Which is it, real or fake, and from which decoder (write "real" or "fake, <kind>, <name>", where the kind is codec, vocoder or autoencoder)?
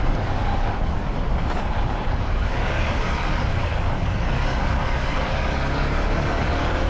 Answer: fake, codec, DAC